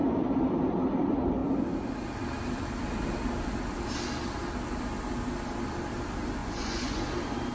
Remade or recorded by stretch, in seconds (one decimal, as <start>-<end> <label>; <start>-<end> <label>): 0.0-6.4 recorded; 6.4-7.0 remade; 7.0-7.5 recorded